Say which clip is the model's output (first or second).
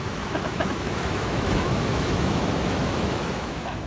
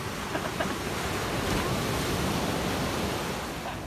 first